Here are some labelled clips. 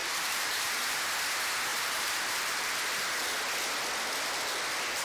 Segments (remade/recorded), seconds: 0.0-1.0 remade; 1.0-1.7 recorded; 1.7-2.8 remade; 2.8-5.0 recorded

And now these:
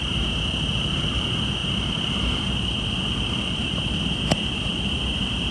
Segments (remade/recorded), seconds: 0.0-1.6 recorded; 1.6-2.3 remade; 2.3-5.5 recorded

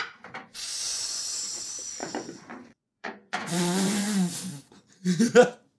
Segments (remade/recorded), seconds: 0.0-0.4 recorded; 0.4-1.2 remade; 1.2-2.0 recorded; 2.0-4.9 remade; 4.9-5.8 recorded

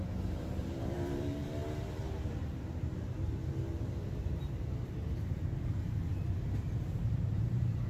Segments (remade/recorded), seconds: 0.0-7.9 remade